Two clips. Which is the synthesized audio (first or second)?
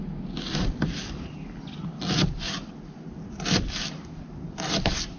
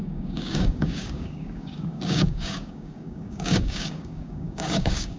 second